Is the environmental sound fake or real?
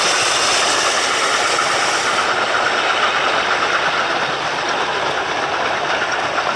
real